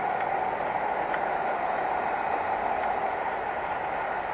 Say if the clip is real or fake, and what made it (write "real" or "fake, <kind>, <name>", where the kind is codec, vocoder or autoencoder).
real